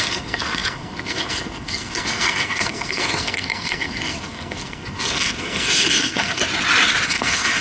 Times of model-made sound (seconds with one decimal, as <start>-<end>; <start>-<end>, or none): 0.0-6.4; 7.1-7.6